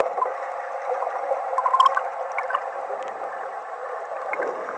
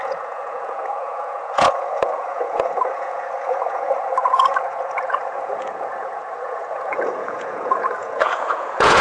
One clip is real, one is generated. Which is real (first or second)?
first